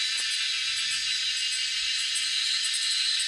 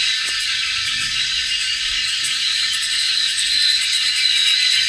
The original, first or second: first